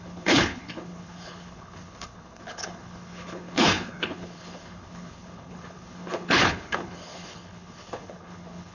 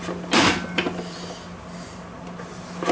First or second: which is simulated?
first